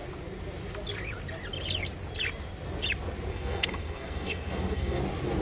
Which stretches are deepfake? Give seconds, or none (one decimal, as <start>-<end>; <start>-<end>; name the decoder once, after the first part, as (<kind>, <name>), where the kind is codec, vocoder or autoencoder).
3.3-5.0 (codec, SNAC)